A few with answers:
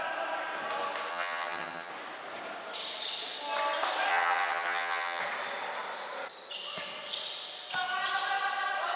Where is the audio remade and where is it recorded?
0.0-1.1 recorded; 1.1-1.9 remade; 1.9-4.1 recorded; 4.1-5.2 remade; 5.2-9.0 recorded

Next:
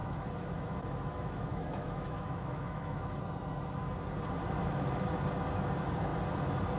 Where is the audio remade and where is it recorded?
0.0-3.2 remade; 3.2-4.6 recorded; 4.6-5.1 remade; 5.1-6.8 recorded

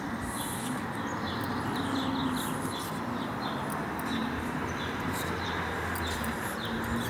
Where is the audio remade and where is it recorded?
0.0-4.2 recorded; 4.2-6.5 remade; 6.5-7.1 recorded